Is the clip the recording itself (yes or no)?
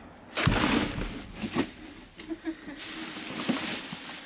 no